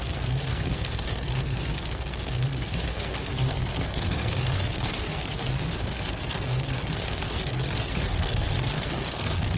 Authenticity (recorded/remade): remade